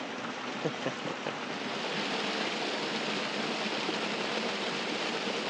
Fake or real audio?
real